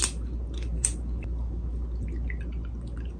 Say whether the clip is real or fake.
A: real